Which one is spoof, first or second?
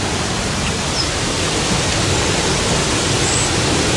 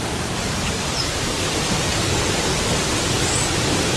second